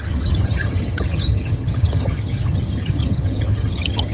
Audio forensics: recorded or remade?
remade